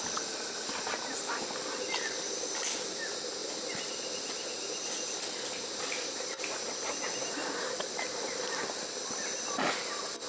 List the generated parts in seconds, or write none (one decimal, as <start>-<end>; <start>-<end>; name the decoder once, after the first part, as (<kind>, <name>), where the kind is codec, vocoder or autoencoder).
7.4-8.6 (vocoder, BigVGAN v2)